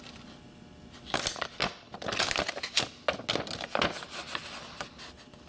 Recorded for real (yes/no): yes